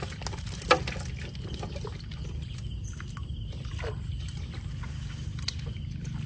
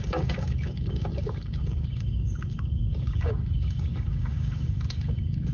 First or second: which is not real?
second